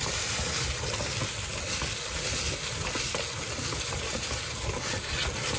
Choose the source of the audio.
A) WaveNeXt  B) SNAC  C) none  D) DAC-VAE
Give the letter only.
C